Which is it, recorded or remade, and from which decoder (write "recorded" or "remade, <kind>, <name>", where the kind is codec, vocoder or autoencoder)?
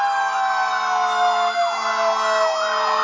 recorded